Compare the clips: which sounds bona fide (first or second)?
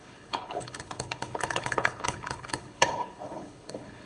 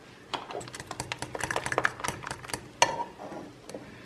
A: second